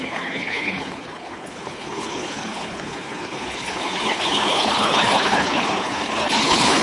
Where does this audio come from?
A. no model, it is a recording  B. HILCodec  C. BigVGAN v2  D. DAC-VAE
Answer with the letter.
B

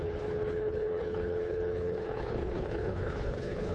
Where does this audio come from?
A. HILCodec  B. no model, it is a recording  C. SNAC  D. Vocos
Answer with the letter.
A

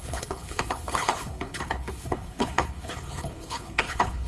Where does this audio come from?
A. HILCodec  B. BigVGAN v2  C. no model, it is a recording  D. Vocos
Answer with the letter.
A